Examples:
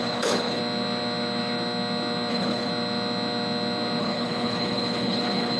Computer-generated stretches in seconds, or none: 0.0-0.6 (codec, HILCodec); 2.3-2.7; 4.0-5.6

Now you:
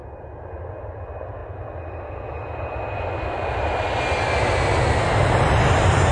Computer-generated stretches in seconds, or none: none

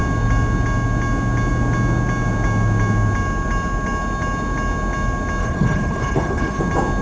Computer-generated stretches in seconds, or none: 5.4-6.6 (codec, HILCodec)